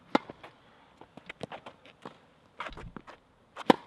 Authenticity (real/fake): real